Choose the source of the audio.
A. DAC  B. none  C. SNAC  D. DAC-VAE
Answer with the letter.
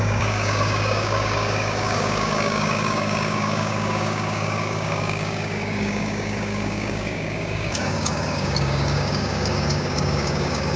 A